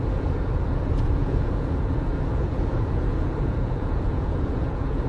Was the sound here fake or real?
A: fake